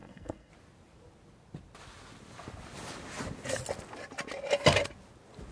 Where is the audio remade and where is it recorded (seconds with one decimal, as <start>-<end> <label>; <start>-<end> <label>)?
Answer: 0.0-0.5 remade; 0.5-5.5 recorded